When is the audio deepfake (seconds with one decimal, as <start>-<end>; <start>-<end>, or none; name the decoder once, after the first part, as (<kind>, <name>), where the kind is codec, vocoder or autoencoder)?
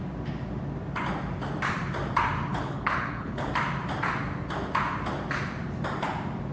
2.5-3.5 (codec, HILCodec)